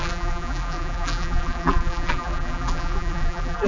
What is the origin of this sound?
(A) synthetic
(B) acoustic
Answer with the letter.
A